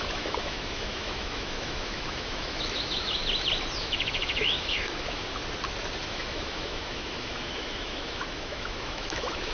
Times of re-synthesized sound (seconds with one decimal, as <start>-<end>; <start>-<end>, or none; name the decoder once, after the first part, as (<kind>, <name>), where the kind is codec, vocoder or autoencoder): 0.0-3.2 (autoencoder, DAC-VAE); 3.8-5.4; 6.1-9.5